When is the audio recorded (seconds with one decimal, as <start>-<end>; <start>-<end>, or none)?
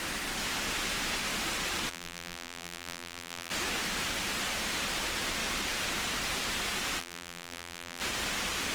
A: 0.0-1.9; 3.5-7.0; 8.0-8.7